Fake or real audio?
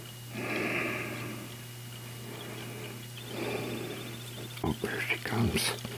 real